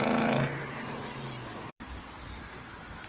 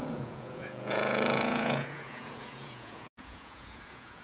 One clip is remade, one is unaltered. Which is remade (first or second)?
second